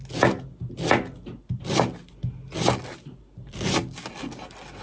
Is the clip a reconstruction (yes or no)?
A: no